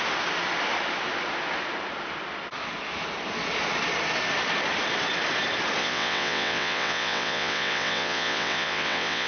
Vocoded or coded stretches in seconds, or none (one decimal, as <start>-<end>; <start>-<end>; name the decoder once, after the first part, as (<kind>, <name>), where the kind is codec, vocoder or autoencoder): 5.8-9.3 (vocoder, WaveNeXt)

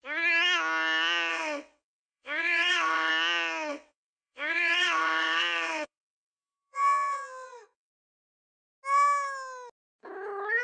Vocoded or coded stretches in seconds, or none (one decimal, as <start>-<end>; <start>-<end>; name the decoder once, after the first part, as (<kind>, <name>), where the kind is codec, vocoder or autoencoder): 1.3-3.1 (vocoder, WaveNeXt); 3.7-7.9

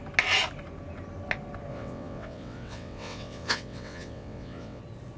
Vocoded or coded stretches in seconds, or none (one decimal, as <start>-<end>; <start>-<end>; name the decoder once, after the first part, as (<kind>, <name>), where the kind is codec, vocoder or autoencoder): 1.7-4.8 (vocoder, WaveNeXt)

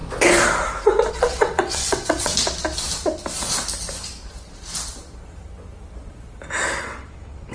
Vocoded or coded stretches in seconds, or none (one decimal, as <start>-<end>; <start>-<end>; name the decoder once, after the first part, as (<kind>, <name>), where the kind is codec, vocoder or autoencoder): 1.1-2.3 (vocoder, WaveNeXt); 6.8-7.5